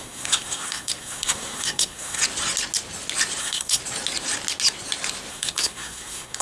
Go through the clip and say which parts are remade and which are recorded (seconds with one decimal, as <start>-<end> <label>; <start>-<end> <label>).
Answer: 0.0-2.2 remade; 2.2-3.4 recorded; 3.4-3.8 remade; 3.8-5.3 recorded; 5.3-6.4 remade